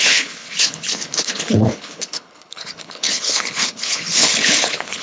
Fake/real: fake